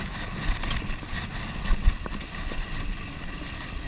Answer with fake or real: real